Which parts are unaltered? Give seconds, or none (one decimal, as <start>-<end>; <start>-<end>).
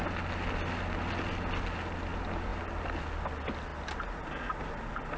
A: 0.0-5.2